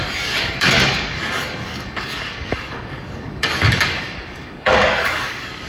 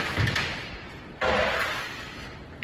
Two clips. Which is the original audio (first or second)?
second